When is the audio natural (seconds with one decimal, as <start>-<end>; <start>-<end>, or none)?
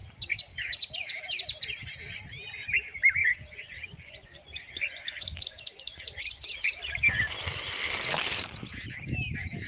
0.0-3.2; 6.5-9.7